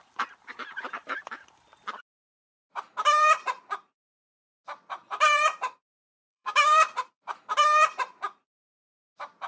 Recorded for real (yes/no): no